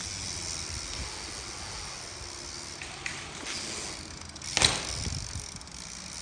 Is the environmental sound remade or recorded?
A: recorded